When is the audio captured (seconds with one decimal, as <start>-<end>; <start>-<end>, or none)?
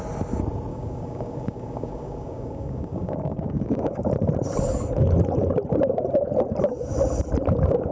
0.0-0.7; 4.1-7.9